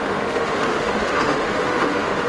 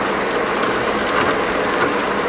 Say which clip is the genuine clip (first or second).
second